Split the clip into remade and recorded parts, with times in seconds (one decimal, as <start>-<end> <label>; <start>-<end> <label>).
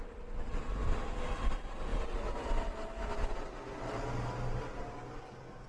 0.0-5.7 recorded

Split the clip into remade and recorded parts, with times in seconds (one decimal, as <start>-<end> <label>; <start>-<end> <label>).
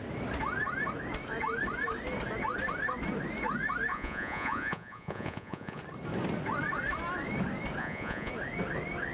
0.0-3.9 recorded; 3.9-5.8 remade; 5.8-7.8 recorded; 7.8-8.3 remade; 8.3-9.1 recorded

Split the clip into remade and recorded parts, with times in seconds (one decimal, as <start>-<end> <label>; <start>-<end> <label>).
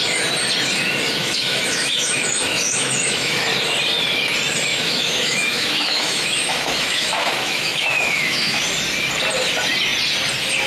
0.0-1.2 recorded; 1.2-3.4 remade; 3.4-4.7 recorded; 4.7-8.6 remade; 8.6-10.7 recorded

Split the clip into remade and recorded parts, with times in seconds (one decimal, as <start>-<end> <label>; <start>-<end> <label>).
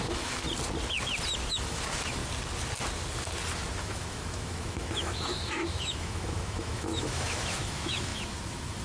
0.0-0.4 remade; 0.4-1.5 recorded; 1.5-2.2 remade; 2.2-3.8 recorded; 3.8-8.8 remade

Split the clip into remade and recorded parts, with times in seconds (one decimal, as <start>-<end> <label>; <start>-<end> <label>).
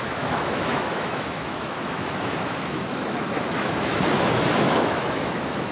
0.0-5.7 remade